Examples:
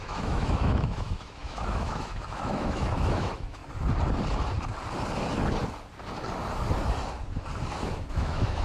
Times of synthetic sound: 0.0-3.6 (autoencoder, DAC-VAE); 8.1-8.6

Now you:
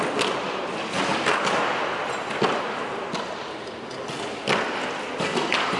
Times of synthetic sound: none

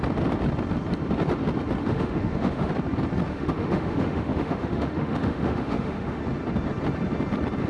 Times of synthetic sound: 1.8-2.7 (autoencoder, DAC-VAE); 3.3-6.2

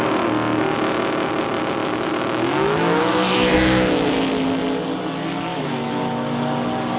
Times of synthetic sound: 1.8-4.1 (autoencoder, DAC-VAE); 5.5-6.0

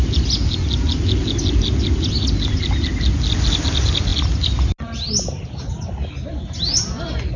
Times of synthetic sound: none

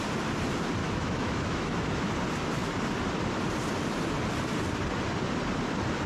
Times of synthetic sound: 0.8-2.1 (autoencoder, DAC-VAE)

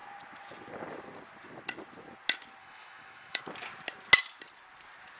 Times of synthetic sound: 2.6-3.4 (autoencoder, DAC-VAE)